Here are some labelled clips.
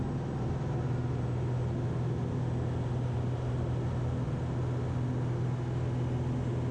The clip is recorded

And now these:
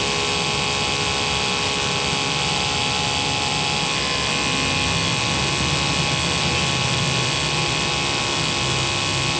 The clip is recorded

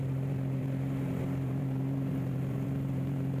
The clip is remade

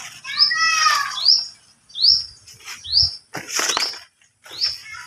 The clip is recorded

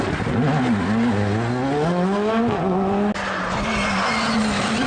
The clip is recorded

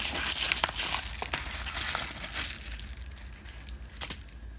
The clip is recorded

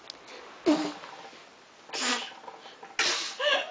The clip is recorded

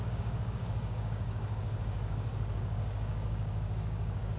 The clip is remade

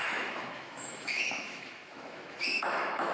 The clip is remade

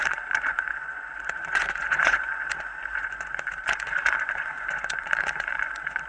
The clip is remade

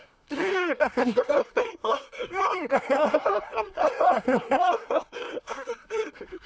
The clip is remade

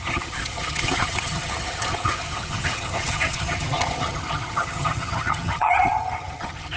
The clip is remade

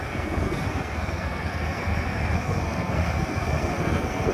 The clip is remade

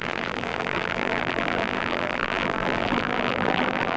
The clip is remade